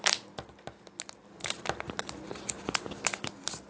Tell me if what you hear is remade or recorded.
recorded